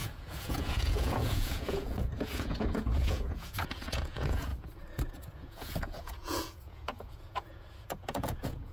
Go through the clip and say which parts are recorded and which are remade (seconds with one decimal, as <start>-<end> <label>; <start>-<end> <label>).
0.0-4.5 remade; 4.5-5.1 recorded; 5.1-8.7 remade